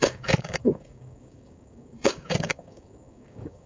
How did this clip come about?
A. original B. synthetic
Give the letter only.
B